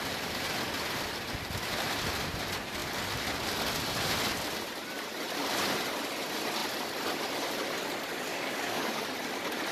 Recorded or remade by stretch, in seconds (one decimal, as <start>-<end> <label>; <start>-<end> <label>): 0.0-8.3 recorded; 8.3-9.0 remade; 9.0-9.7 recorded

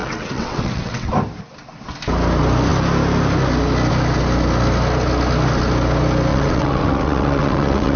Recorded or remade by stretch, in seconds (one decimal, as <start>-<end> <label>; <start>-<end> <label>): 0.0-1.1 remade; 1.1-6.3 recorded; 6.3-8.0 remade

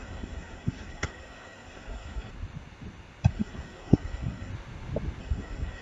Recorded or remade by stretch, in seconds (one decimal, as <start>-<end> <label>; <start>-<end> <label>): 0.0-2.3 remade; 2.3-3.3 recorded; 3.3-4.5 remade; 4.5-5.2 recorded; 5.2-5.8 remade

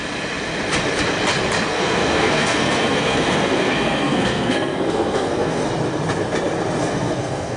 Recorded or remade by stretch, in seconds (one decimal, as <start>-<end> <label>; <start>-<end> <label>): 0.0-1.7 recorded; 1.7-5.7 remade; 5.7-6.8 recorded; 6.8-7.6 remade